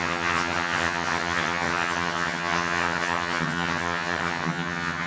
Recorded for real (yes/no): no